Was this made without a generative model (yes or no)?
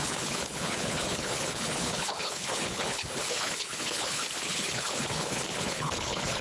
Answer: no